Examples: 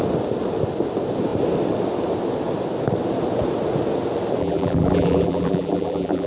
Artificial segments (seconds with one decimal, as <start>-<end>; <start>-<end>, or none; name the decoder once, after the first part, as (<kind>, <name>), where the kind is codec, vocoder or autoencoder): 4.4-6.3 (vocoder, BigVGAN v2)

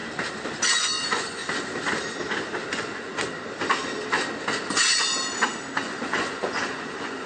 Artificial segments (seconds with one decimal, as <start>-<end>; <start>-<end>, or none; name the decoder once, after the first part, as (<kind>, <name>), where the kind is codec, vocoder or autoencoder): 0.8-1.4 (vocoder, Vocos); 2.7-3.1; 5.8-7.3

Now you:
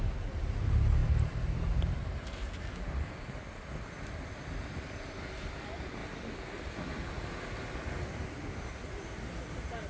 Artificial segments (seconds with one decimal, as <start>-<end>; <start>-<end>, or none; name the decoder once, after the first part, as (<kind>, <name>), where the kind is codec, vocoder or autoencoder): none

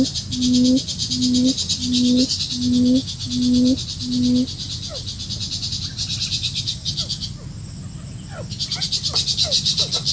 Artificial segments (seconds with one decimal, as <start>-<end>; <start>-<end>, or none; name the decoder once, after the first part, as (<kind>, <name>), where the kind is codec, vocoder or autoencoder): none